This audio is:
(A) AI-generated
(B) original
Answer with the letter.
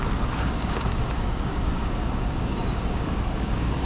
A